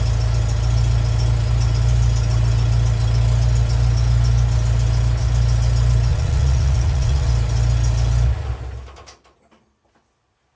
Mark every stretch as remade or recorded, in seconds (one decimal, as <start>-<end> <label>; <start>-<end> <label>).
0.0-6.1 recorded; 6.1-7.3 remade; 7.3-10.6 recorded